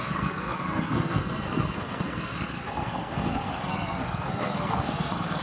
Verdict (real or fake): fake